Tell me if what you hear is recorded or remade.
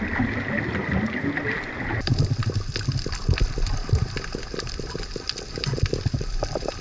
recorded